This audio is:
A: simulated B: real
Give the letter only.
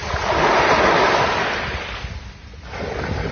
B